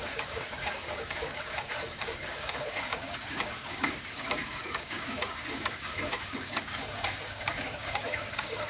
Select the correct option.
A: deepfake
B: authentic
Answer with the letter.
A